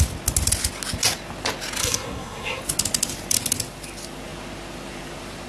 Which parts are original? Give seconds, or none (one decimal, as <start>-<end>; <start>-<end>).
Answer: 0.0-1.8; 2.6-5.5

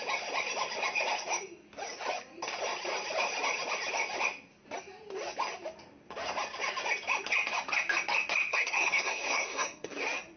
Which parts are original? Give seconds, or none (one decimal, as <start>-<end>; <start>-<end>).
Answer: 0.0-8.5; 9.9-10.4

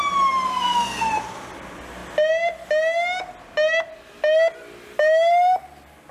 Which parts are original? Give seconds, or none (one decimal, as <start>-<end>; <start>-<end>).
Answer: 0.0-0.5; 1.1-6.1

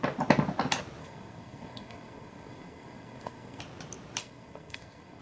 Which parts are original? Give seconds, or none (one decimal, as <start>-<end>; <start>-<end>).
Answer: 0.0-1.0; 3.6-4.2

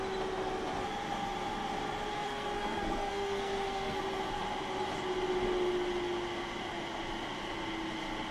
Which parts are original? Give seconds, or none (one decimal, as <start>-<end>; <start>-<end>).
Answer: 0.0-2.1; 4.0-8.3

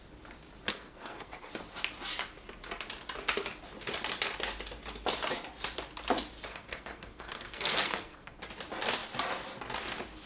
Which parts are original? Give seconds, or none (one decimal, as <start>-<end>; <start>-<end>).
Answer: 0.0-0.7; 1.5-6.5; 8.4-10.3

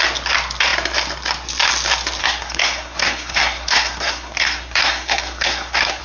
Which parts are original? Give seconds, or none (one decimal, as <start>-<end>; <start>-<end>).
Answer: 0.0-2.2

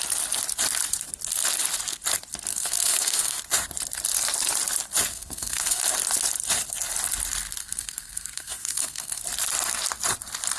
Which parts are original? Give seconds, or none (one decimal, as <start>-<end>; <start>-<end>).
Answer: 0.0-2.5; 3.4-5.1; 5.8-7.6; 9.2-10.6